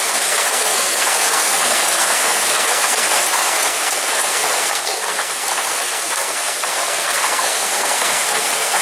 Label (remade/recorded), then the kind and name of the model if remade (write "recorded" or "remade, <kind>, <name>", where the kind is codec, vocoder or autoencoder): remade, codec, SNAC